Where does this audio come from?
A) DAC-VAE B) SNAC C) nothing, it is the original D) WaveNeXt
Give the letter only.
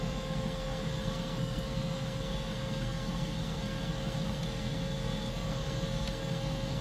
B